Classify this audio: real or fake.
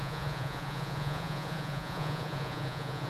fake